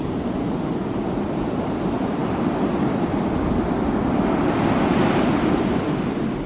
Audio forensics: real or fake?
real